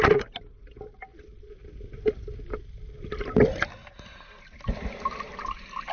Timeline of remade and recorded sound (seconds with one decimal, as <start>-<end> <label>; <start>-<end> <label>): 0.0-5.9 recorded